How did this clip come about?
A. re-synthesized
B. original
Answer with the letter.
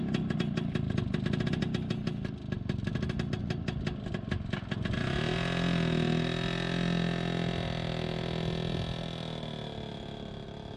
B